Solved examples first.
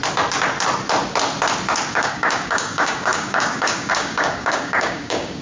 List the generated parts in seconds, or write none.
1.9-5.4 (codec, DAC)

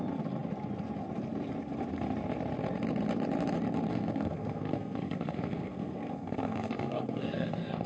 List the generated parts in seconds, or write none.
3.9-7.9 (codec, SNAC)

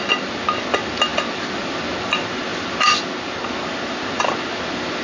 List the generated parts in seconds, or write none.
none

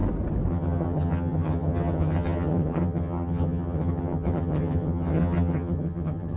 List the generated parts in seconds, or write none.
0.5-6.4 (vocoder, HiFi-GAN)

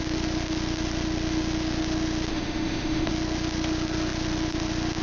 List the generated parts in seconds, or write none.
2.3-3.1 (autoencoder, DAC-VAE)